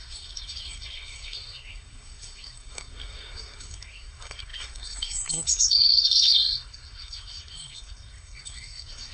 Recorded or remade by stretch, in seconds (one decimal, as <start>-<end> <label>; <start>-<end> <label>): 0.0-9.1 remade